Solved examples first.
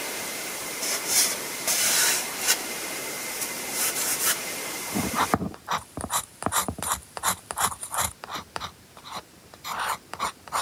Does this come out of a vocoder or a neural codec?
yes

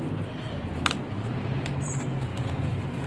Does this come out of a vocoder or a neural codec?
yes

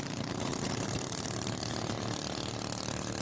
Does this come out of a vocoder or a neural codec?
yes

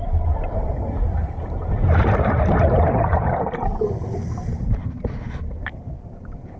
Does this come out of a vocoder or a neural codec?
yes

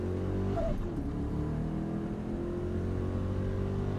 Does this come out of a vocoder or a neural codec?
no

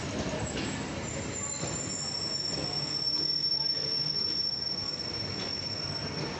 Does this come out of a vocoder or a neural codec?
no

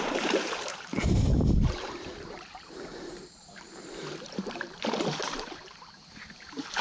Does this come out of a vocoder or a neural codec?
yes